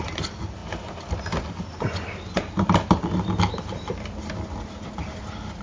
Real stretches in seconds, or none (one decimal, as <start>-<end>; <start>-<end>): 0.0-5.6